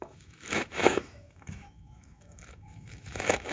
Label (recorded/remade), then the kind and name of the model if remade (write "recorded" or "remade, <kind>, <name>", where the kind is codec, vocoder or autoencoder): remade, autoencoder, DAC-VAE